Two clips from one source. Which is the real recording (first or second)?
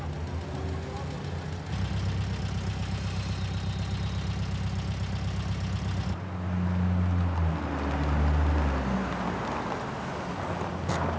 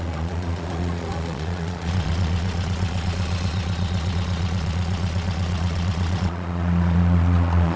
first